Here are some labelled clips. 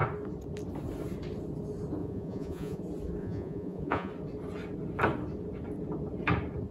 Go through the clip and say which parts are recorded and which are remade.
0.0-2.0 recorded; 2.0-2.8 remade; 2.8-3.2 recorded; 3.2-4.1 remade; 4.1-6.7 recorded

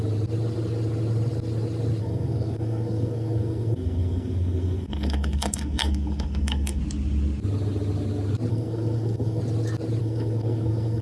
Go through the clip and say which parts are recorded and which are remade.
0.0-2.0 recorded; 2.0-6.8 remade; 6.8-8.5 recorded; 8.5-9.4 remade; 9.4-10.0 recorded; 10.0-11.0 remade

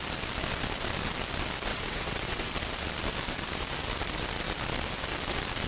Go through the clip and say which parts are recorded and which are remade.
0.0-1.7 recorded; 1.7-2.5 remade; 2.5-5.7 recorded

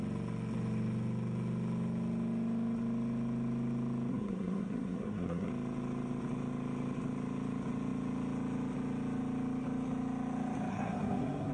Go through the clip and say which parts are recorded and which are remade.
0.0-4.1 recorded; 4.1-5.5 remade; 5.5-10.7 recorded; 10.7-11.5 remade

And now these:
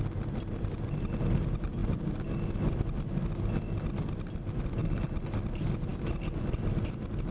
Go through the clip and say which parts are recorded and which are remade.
0.0-7.3 recorded